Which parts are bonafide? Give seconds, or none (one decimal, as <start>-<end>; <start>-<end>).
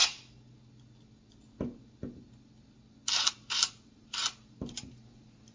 0.0-3.3